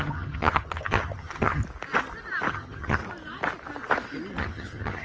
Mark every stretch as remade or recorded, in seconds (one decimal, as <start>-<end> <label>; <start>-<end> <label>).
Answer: 0.0-1.6 remade; 1.6-2.5 recorded; 2.5-3.0 remade; 3.0-4.4 recorded; 4.4-5.0 remade